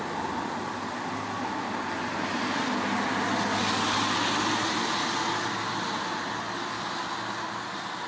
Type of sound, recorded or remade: recorded